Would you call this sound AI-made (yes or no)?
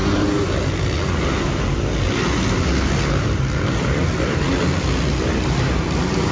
no